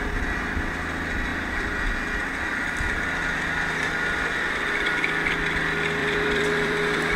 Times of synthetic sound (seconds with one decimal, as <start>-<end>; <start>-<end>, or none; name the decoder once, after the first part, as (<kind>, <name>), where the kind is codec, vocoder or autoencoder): 1.3-1.8 (vocoder, BigVGAN v2); 6.0-7.2